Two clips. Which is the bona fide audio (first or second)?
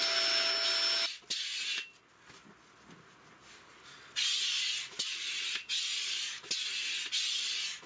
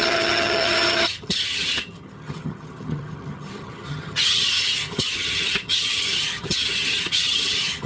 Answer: first